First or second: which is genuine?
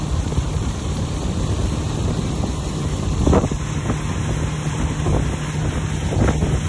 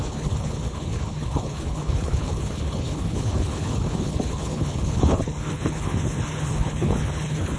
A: first